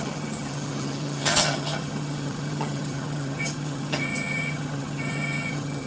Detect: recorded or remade remade